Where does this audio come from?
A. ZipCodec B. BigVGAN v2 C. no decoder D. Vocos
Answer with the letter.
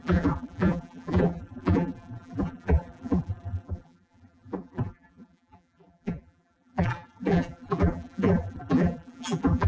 B